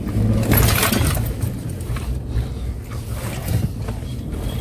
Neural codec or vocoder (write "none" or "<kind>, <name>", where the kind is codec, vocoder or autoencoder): none